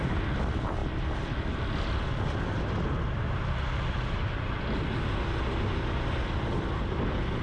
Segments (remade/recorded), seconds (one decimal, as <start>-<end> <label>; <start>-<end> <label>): 0.0-7.4 recorded